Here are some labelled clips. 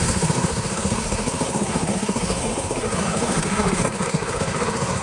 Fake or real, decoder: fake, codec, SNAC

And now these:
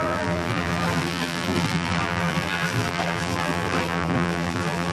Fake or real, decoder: fake, vocoder, BigVGAN v2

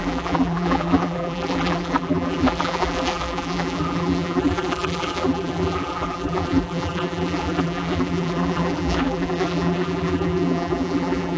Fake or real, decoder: fake, vocoder, BigVGAN v2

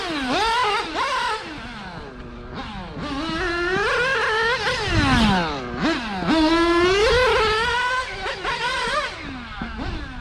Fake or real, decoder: real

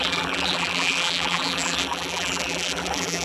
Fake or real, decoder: fake, vocoder, BigVGAN v2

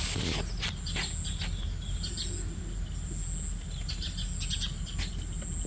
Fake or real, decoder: real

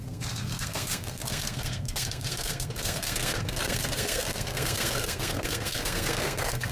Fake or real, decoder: fake, codec, SNAC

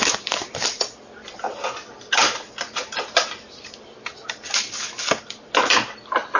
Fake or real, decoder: real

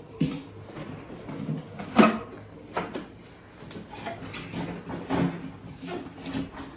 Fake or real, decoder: real